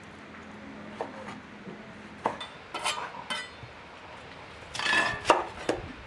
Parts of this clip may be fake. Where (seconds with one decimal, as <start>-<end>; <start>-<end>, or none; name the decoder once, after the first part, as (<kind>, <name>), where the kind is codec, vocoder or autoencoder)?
none